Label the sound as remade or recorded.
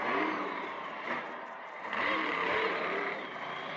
remade